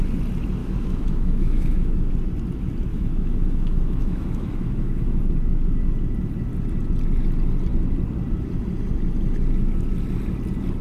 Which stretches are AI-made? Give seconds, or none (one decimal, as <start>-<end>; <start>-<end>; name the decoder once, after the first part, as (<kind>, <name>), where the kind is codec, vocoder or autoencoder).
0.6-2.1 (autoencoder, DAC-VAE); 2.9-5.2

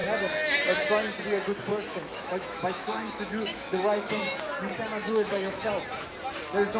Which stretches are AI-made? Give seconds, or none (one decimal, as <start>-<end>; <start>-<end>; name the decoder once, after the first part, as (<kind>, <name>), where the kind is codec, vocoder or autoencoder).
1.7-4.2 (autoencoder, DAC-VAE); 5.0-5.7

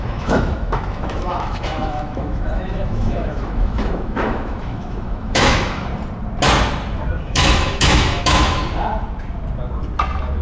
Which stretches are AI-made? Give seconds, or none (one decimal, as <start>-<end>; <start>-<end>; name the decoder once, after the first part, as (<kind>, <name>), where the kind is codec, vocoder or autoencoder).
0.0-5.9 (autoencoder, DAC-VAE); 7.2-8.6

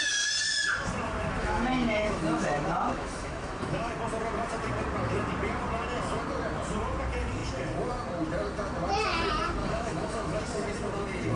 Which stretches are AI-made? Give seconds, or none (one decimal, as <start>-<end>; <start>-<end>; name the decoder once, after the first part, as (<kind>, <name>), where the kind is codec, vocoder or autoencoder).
1.4-3.9 (autoencoder, DAC-VAE); 9.6-10.4

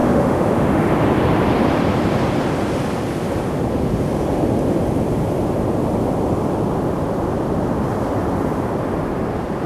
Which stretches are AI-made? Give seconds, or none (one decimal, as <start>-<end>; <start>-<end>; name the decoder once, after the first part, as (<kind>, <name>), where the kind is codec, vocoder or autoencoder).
0.0-0.9 (autoencoder, DAC-VAE)

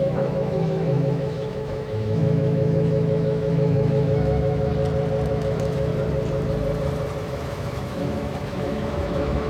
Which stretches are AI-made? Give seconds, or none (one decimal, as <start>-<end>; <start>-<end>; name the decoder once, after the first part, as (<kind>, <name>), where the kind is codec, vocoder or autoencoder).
0.0-4.7 (autoencoder, DAC-VAE); 5.3-5.9; 7.2-9.5

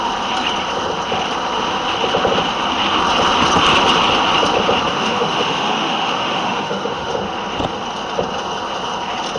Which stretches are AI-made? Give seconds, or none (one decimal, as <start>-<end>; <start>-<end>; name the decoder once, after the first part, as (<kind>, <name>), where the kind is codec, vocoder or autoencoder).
4.9-7.2 (autoencoder, DAC-VAE)

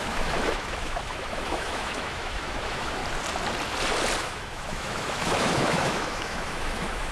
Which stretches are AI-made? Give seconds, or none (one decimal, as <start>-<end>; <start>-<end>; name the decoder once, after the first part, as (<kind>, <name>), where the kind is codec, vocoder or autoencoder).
0.0-3.0 (autoencoder, DAC-VAE); 4.2-7.1